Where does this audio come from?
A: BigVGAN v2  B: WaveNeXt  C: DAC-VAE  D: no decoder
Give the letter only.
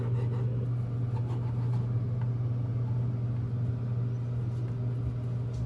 D